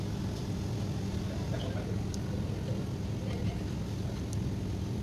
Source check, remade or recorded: recorded